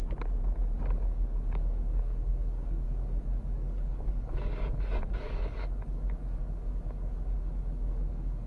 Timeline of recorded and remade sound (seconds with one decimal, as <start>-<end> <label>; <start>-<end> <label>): 0.0-0.8 recorded; 0.8-8.5 remade